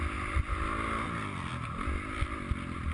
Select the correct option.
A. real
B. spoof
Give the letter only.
A